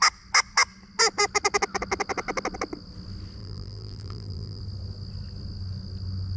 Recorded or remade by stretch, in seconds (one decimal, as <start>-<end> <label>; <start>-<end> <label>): 0.0-3.4 recorded; 3.4-4.6 remade; 4.6-6.4 recorded